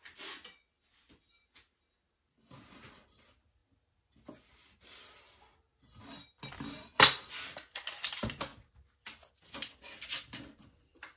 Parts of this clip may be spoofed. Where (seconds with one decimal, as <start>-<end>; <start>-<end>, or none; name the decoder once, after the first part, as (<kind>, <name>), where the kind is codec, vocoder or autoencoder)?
none